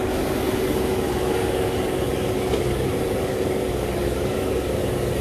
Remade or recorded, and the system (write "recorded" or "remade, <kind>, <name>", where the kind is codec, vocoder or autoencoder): remade, codec, DAC